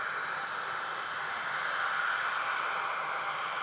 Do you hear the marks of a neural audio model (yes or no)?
no